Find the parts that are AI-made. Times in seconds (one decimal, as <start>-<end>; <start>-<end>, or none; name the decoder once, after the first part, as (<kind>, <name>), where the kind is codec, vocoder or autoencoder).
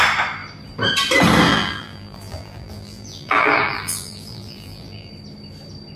1.5-5.1 (vocoder, BigVGAN v2)